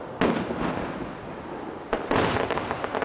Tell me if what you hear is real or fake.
real